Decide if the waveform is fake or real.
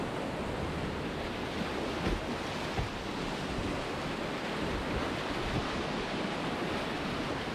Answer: real